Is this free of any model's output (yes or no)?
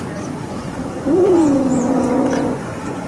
no